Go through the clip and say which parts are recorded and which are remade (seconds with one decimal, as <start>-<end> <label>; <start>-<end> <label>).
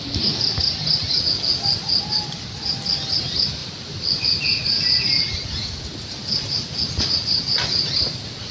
0.0-8.5 recorded